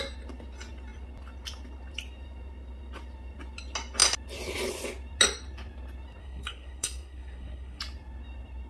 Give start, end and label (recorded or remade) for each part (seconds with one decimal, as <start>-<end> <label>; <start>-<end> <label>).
0.0-6.2 recorded; 6.2-7.8 remade; 7.8-8.7 recorded